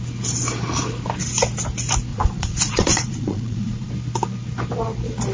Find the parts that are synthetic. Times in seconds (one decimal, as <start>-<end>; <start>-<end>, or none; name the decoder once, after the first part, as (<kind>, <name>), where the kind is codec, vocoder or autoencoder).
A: 2.1-3.9 (vocoder, Vocos)

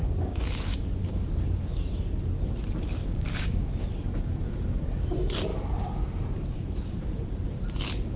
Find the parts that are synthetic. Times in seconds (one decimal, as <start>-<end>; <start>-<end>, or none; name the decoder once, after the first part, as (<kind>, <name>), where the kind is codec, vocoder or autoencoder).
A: 0.0-1.9 (codec, DAC); 3.0-3.7

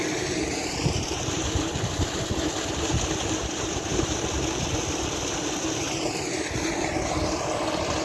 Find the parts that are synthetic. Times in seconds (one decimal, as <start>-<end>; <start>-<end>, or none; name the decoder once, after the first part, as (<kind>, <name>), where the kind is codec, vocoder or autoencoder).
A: none

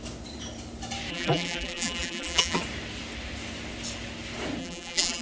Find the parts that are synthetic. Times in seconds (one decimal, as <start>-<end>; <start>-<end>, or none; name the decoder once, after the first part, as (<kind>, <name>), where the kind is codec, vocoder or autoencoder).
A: 1.1-2.6 (vocoder, BigVGAN v2); 4.6-5.2

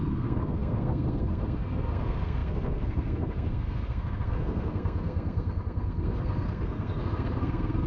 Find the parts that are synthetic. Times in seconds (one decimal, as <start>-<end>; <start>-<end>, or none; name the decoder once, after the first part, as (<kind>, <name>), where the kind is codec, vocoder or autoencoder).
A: 0.0-7.9 (codec, SNAC)

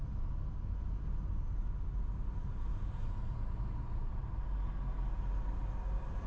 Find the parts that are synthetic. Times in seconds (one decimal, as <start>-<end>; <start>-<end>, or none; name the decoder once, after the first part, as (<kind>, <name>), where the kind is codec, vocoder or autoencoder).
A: 2.4-3.3 (vocoder, BigVGAN v2)

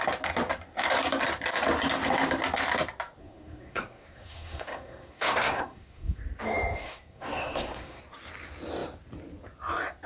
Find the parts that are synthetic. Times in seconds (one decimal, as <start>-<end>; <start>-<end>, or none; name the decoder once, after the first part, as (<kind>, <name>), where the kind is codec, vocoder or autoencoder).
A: 3.2-6.2 (codec, SNAC); 6.8-8.0